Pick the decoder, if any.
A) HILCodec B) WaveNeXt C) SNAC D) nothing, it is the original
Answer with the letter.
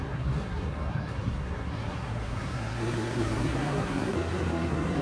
C